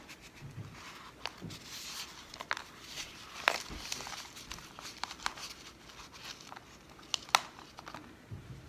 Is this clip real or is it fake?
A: real